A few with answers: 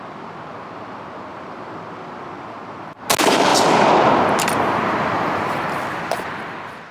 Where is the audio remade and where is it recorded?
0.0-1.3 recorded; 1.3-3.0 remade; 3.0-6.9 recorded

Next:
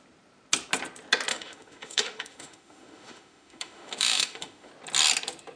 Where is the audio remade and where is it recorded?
0.0-1.3 recorded; 1.3-4.7 remade; 4.7-5.6 recorded

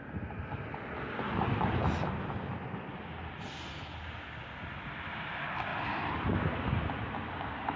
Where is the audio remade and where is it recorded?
0.0-7.8 recorded

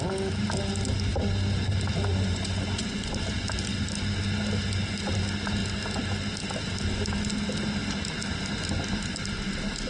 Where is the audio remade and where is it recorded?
0.0-2.1 recorded; 2.1-3.1 remade; 3.1-9.9 recorded

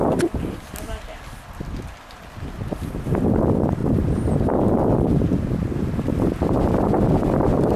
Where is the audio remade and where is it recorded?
0.0-7.8 recorded